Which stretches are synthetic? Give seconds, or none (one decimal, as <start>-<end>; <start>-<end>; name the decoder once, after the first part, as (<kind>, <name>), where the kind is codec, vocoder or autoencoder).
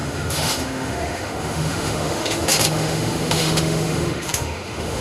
0.0-5.0 (autoencoder, DAC-VAE)